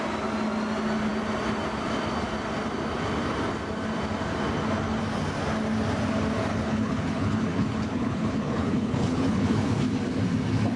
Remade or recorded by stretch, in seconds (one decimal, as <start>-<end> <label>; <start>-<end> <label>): 0.0-6.5 recorded; 6.5-9.8 remade; 9.8-10.8 recorded